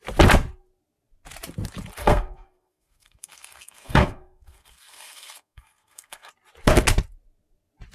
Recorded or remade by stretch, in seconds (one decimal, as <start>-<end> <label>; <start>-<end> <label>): 0.0-2.0 recorded; 2.0-6.3 remade; 6.3-7.9 recorded